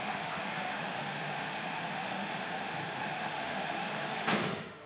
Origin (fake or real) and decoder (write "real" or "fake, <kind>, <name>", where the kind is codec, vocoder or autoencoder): fake, autoencoder, DAC-VAE